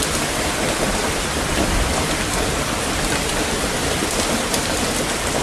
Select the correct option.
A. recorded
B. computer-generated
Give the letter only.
B